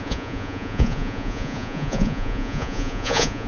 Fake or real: fake